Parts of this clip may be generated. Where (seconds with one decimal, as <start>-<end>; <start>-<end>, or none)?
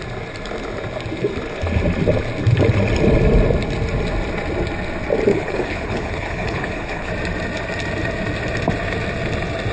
5.3-7.1